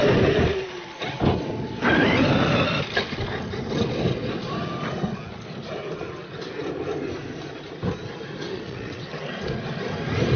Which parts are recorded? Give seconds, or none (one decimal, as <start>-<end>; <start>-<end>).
0.0-8.5; 9.4-10.4